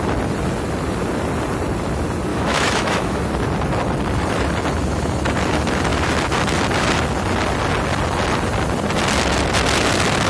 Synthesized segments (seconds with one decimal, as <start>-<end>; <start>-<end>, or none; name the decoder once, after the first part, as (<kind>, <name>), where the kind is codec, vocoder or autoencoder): 2.3-3.2 (autoencoder, DAC-VAE)